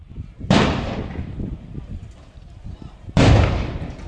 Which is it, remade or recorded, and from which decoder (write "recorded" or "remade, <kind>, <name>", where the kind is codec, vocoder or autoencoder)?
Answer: remade, vocoder, BigVGAN v2